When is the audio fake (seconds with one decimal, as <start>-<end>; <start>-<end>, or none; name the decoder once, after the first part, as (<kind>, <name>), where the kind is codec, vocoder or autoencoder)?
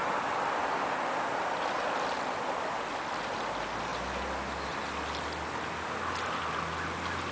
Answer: none